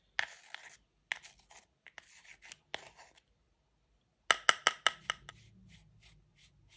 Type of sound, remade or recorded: recorded